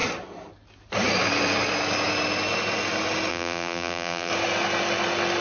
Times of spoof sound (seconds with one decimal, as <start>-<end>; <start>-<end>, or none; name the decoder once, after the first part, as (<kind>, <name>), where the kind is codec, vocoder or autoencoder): 3.3-4.3 (vocoder, BigVGAN v2)